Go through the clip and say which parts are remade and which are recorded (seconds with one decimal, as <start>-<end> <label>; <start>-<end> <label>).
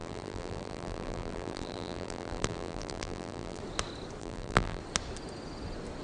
0.0-3.6 remade; 3.6-4.2 recorded; 4.2-4.8 remade; 4.8-6.0 recorded